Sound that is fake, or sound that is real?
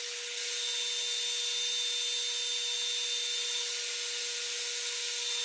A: real